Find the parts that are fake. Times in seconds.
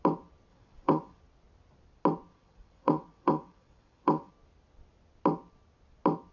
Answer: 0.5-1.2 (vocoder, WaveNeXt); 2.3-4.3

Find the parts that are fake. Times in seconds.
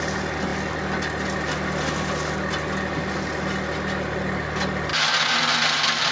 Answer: none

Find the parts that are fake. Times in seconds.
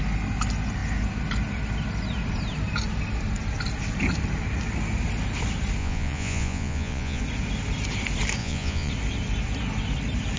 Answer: 5.8-7.2 (vocoder, Vocos); 8.4-8.9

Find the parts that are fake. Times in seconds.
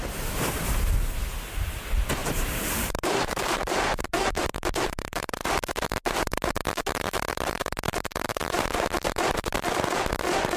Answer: 2.2-5.5 (vocoder, BigVGAN v2)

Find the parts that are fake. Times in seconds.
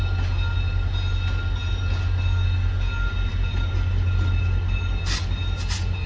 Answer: none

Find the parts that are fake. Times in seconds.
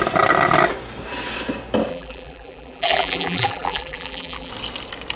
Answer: 1.9-4.5 (vocoder, BigVGAN v2)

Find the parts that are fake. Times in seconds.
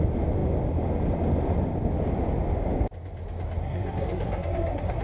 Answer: 3.6-5.0 (codec, SNAC)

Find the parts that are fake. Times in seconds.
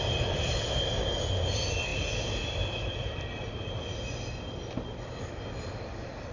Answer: none